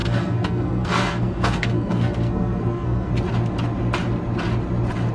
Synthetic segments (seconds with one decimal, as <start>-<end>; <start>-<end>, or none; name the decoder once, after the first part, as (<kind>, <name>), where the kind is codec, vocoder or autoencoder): 0.0-3.1 (codec, SNAC)